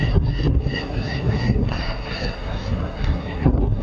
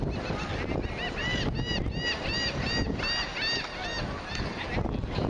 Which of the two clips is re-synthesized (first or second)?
first